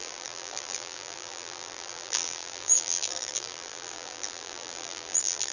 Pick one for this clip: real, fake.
fake